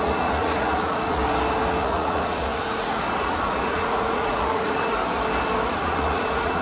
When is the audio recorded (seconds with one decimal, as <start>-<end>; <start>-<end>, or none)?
1.2-1.8; 5.0-5.7